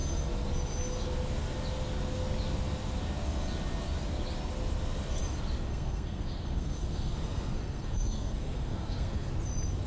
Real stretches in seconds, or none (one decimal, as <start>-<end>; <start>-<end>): 0.0-5.7; 9.3-9.9